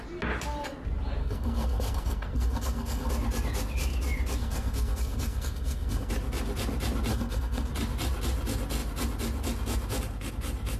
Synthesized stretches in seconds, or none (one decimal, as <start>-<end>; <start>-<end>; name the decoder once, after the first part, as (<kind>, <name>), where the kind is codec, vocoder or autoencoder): 1.2-3.1 (codec, SNAC); 4.4-6.1; 7.1-7.7